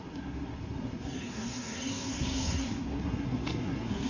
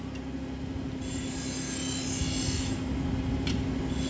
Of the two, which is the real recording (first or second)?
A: second